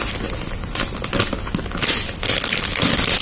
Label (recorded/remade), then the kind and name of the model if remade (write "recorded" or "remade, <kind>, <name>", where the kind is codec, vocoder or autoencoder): recorded